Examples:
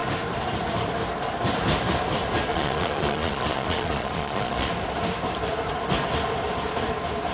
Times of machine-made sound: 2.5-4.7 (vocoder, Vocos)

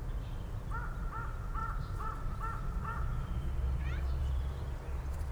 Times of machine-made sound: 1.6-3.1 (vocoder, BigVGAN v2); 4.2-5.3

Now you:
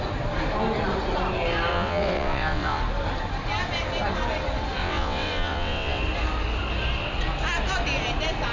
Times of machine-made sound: 1.7-2.8 (vocoder, WaveNeXt); 4.8-6.0